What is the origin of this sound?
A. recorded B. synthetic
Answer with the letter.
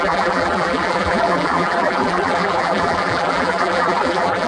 B